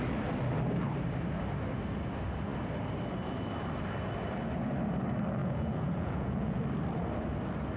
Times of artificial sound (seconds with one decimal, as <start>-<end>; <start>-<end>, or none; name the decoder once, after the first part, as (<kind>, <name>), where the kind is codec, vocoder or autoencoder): 5.4-6.6 (vocoder, Vocos)